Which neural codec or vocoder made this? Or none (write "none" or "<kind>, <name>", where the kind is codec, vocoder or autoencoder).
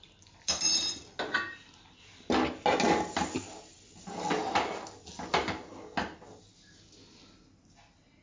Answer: none